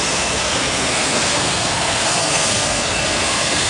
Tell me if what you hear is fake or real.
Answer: fake